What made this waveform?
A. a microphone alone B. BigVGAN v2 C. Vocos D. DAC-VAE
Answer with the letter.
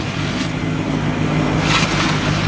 A